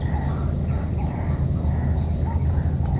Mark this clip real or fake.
real